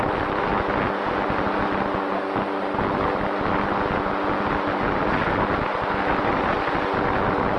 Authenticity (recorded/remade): recorded